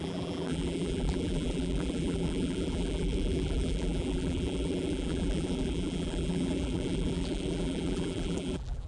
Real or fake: fake